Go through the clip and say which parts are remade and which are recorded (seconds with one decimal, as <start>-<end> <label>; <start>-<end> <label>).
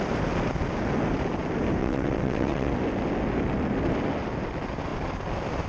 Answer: 0.0-1.8 recorded; 1.8-2.7 remade; 2.7-5.7 recorded